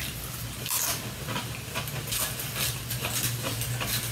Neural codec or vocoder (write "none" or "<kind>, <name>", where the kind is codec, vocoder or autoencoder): none